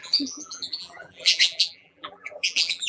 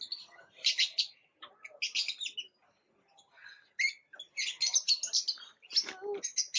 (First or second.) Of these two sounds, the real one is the second